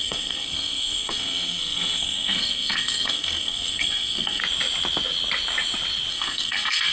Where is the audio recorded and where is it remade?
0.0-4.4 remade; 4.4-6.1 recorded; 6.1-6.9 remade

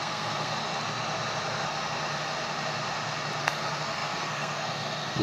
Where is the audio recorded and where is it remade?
0.0-0.6 remade; 0.6-3.4 recorded; 3.4-5.2 remade

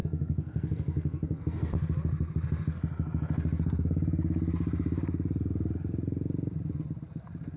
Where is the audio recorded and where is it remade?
0.0-1.7 remade; 1.7-7.6 recorded

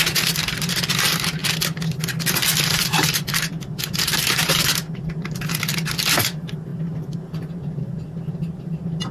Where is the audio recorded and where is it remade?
0.0-9.1 recorded

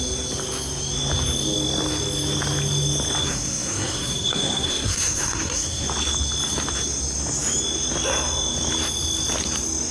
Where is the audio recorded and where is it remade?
0.0-3.2 recorded; 3.2-5.9 remade; 5.9-9.9 recorded

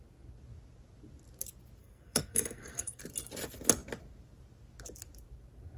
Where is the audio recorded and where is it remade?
0.0-1.8 recorded; 1.8-3.0 remade; 3.0-5.8 recorded

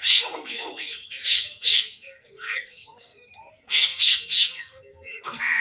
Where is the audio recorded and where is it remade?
0.0-5.6 remade